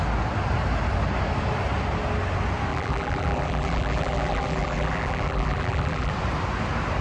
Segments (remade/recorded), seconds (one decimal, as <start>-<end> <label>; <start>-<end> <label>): 0.0-2.7 recorded; 2.7-6.1 remade; 6.1-7.0 recorded